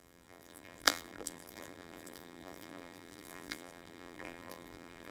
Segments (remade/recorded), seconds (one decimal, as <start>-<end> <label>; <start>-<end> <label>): 0.0-5.1 remade